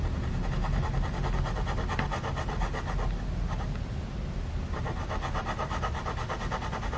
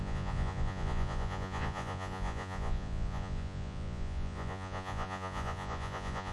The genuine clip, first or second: first